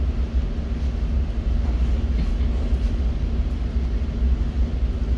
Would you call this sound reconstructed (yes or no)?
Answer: no